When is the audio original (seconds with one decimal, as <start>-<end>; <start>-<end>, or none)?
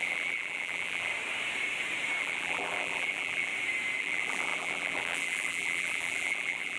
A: 1.1-2.2; 3.5-4.0